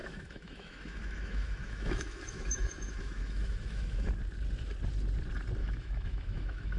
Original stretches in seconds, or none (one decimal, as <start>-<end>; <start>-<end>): 4.1-5.6